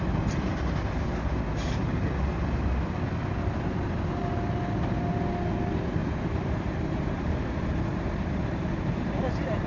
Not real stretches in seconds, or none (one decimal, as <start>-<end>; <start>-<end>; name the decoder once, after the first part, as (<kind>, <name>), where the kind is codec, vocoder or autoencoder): 6.0-7.7 (vocoder, BigVGAN v2); 8.4-9.7